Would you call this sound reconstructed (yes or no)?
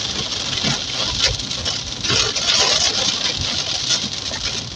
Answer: no